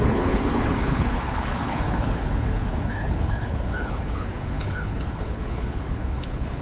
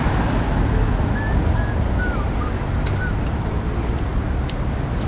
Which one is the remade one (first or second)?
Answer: first